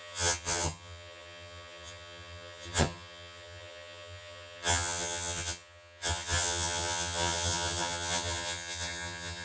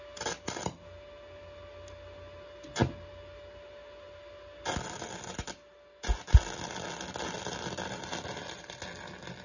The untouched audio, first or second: second